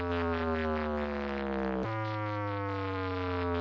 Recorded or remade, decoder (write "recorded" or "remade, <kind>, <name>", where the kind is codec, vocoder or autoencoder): recorded